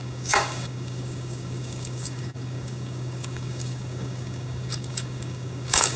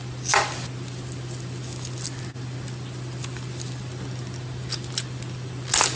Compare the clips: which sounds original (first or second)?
second